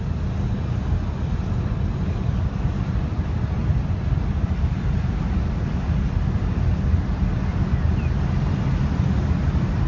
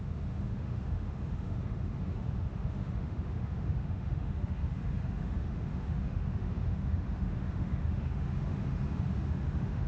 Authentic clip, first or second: first